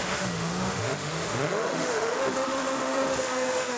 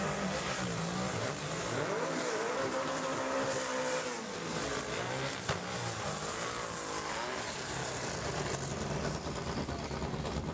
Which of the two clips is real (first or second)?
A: second